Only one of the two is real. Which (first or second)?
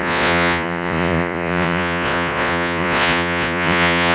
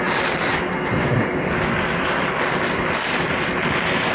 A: second